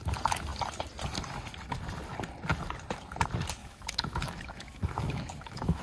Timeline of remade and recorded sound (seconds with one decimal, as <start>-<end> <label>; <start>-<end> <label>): 0.0-3.6 recorded; 3.6-5.8 remade